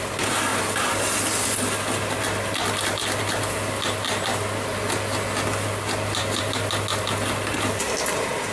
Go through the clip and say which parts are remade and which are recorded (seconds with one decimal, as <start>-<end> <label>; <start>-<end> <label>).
0.0-8.5 recorded